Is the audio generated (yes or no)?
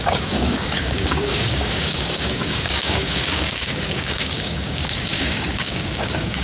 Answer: yes